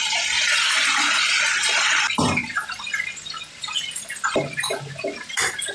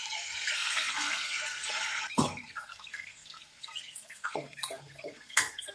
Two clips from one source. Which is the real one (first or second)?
first